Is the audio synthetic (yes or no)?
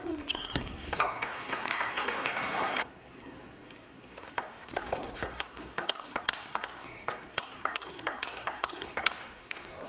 yes